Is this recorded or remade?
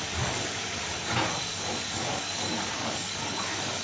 remade